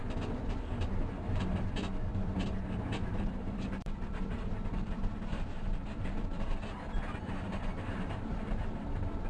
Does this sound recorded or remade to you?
remade